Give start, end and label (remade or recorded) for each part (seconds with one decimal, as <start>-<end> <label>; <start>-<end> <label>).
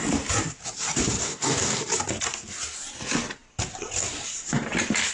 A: 0.0-1.2 recorded; 1.2-1.8 remade; 1.8-5.1 recorded